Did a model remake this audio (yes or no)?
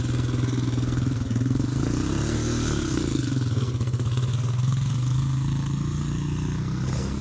yes